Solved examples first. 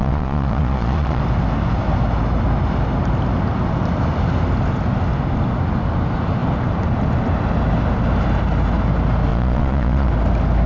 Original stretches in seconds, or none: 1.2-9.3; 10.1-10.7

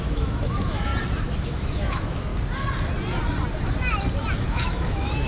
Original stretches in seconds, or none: 0.9-1.4; 2.3-4.5

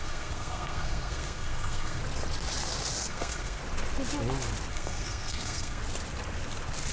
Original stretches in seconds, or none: 2.0-3.1; 3.6-4.7; 5.8-6.9

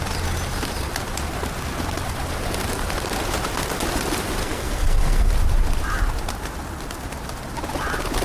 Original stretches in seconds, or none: 0.0-4.4; 5.3-8.2

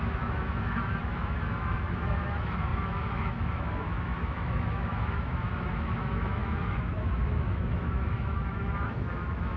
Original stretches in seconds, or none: none

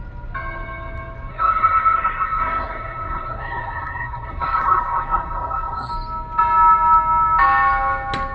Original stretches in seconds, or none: 0.0-1.3; 5.9-8.3

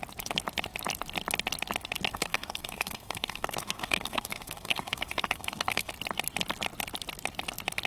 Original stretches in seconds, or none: 0.0-2.1; 5.9-7.9

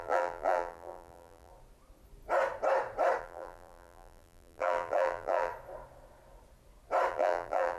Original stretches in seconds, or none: 1.5-3.2; 5.5-7.1